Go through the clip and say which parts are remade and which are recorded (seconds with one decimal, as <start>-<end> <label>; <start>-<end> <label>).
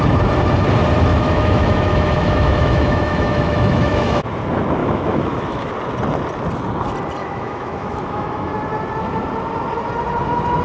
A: 0.0-1.1 recorded; 1.1-4.2 remade; 4.2-4.8 recorded; 4.8-5.7 remade; 5.7-7.2 recorded; 7.2-8.5 remade; 8.5-10.6 recorded